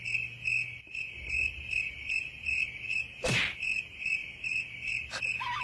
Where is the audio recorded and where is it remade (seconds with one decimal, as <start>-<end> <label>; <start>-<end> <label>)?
0.0-5.6 recorded